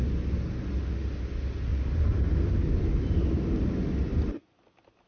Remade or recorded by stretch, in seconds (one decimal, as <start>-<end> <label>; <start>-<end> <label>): 0.0-5.1 recorded